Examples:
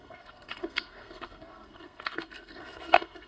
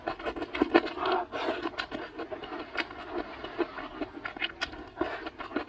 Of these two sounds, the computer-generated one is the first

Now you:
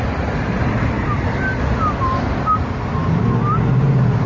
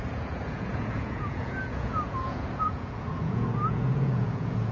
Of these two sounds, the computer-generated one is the second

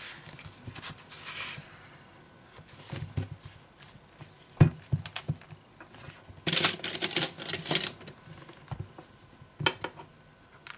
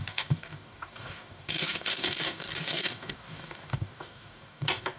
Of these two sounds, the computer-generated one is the second